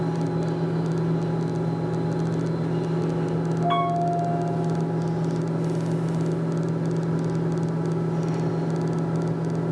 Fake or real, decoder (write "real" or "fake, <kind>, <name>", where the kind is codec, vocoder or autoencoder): real